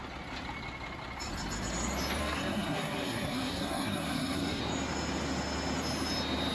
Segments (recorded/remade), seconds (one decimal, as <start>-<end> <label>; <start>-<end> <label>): 0.0-2.2 recorded; 2.2-4.6 remade; 4.6-6.5 recorded